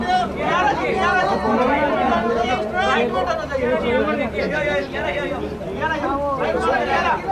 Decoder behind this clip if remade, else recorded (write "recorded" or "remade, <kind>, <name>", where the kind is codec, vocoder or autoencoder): recorded